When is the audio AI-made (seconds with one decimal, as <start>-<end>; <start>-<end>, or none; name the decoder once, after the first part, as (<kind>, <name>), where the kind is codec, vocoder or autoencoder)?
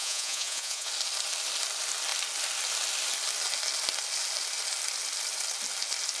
0.0-0.9 (vocoder, Vocos)